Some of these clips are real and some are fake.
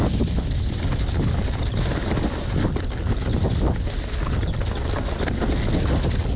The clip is real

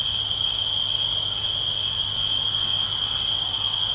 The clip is real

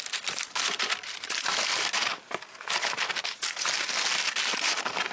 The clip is real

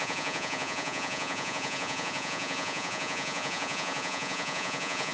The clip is fake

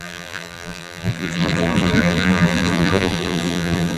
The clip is fake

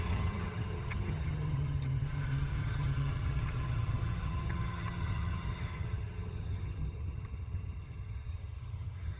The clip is fake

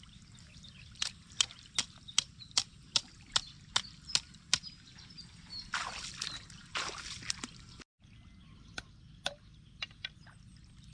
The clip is real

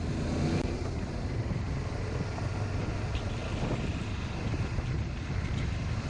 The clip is real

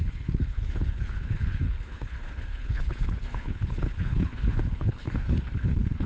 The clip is fake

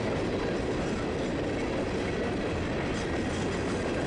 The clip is real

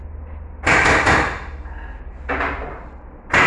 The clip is real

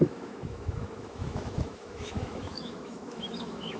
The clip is fake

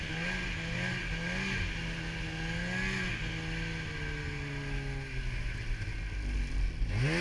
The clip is real